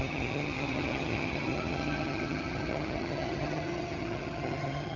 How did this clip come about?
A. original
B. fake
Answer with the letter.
B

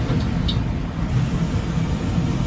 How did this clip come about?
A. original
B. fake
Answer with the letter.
A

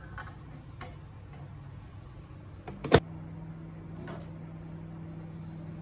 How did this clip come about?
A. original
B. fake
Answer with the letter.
A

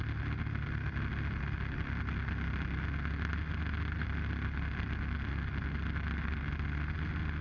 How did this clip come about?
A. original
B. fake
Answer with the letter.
A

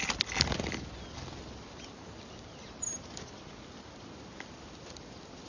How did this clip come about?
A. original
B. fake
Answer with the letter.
A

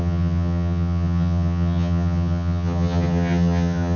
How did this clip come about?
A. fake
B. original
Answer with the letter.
A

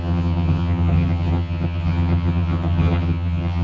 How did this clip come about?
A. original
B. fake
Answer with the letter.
B